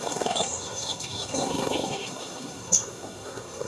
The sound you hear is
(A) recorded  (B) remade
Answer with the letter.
B